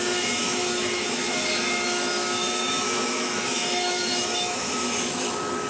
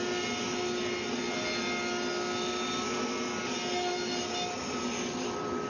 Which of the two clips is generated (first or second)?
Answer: first